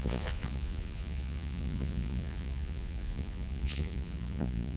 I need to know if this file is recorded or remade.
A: remade